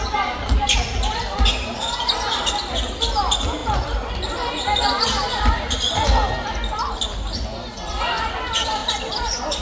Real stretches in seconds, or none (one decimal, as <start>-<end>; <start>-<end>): 0.0-9.6